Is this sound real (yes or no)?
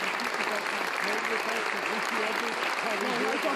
yes